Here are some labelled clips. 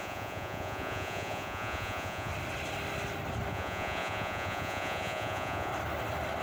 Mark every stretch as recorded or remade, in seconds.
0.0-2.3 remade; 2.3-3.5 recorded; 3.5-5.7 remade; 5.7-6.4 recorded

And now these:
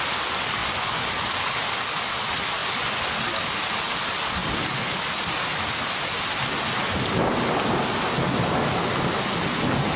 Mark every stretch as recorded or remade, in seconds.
0.0-0.6 recorded; 0.6-1.1 remade; 1.1-2.6 recorded; 2.6-3.1 remade; 3.1-10.0 recorded

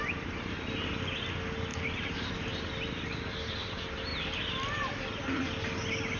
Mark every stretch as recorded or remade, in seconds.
0.0-6.2 recorded

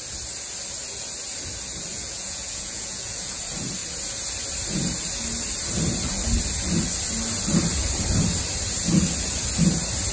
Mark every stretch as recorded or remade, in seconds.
0.0-1.9 recorded; 1.9-3.4 remade; 3.4-10.1 recorded

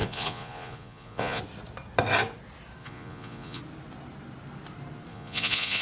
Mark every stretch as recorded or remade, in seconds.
0.0-1.4 remade; 1.4-2.8 recorded; 2.8-3.6 remade; 3.6-5.1 recorded; 5.1-5.8 remade

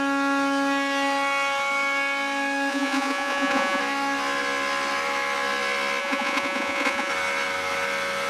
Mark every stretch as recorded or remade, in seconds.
0.0-2.7 recorded; 2.7-3.8 remade; 3.8-6.0 recorded; 6.0-7.1 remade; 7.1-8.3 recorded

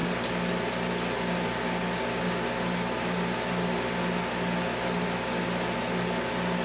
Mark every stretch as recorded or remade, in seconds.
0.0-6.6 recorded